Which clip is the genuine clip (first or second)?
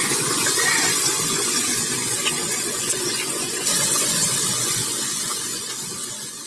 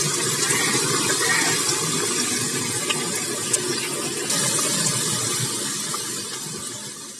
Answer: second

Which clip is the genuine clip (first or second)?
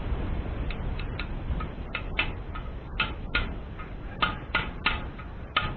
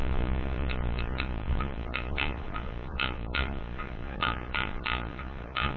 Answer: first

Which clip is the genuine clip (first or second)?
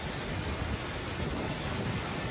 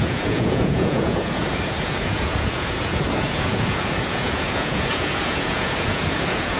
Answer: first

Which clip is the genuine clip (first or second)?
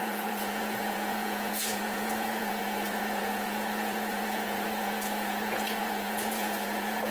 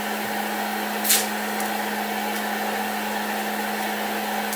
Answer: second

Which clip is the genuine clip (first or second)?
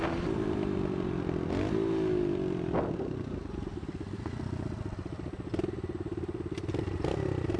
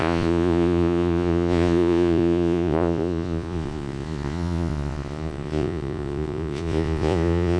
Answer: first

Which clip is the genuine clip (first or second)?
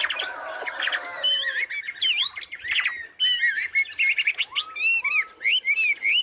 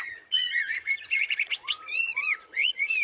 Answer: first